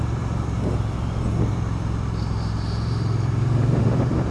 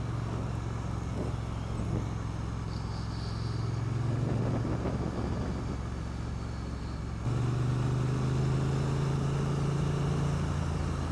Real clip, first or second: second